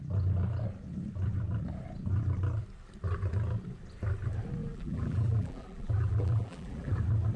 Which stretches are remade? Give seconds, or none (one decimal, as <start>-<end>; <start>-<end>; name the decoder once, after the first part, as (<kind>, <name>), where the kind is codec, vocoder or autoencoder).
4.6-7.0 (vocoder, BigVGAN v2)